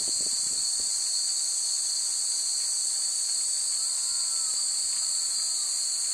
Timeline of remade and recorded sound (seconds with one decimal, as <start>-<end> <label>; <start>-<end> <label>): 0.0-6.1 recorded